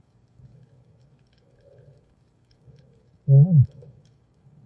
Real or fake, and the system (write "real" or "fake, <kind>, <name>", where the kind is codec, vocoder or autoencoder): fake, codec, DAC